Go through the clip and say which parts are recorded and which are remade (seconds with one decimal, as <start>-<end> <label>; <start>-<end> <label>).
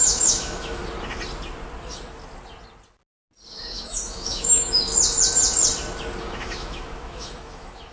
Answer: 0.0-0.8 remade; 0.8-3.5 recorded; 3.5-4.9 remade; 4.9-6.2 recorded; 6.2-7.9 remade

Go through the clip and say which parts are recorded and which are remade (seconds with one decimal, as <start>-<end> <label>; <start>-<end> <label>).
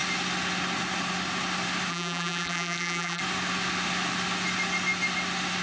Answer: 0.0-1.9 recorded; 1.9-3.2 remade; 3.2-5.6 recorded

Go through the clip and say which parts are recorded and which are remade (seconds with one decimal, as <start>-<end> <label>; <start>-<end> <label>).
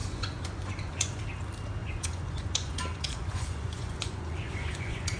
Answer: 0.0-1.2 remade; 1.2-1.8 recorded; 1.8-5.2 remade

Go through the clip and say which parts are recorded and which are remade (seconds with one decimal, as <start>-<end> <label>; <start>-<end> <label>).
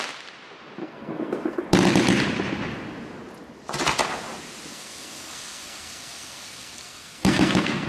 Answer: 0.0-0.8 recorded; 0.8-1.6 remade; 1.6-4.7 recorded; 4.7-7.9 remade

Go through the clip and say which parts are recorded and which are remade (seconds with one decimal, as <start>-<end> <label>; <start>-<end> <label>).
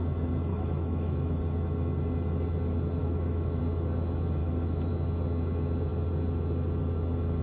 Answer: 0.0-0.5 recorded; 0.5-1.4 remade; 1.4-3.0 recorded; 3.0-3.6 remade; 3.6-4.4 recorded; 4.4-4.9 remade; 4.9-7.4 recorded